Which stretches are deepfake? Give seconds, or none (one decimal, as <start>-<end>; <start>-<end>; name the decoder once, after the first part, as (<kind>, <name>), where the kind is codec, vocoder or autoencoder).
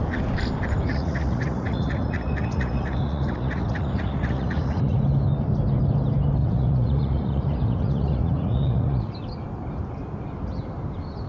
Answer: 0.9-5.0 (vocoder, Vocos); 6.4-9.1